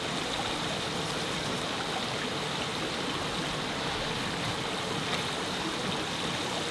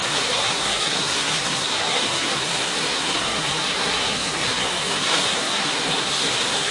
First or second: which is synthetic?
second